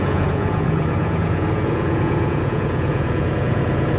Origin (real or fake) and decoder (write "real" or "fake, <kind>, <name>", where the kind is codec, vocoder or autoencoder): fake, vocoder, Vocos